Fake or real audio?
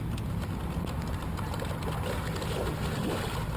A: real